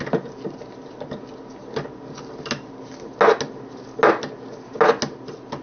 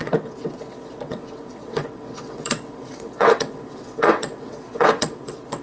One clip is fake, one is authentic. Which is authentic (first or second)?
first